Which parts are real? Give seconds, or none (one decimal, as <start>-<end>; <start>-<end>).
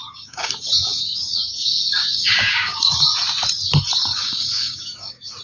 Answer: 2.9-4.0